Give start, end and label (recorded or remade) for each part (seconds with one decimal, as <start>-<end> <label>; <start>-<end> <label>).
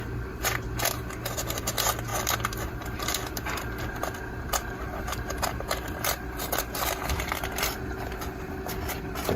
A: 0.0-9.4 recorded